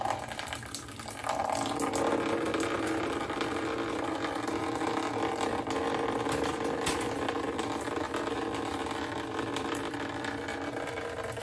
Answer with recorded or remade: recorded